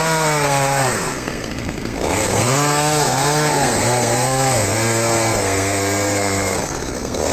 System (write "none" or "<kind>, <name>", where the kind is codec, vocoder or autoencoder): codec, SNAC